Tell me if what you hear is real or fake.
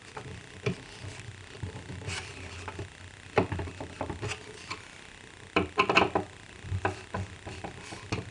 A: real